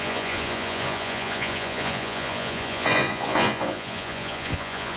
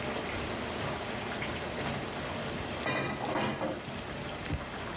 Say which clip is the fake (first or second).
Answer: first